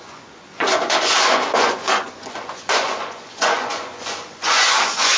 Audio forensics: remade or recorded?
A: remade